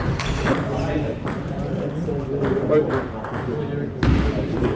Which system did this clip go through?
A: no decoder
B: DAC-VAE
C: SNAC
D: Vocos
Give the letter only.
A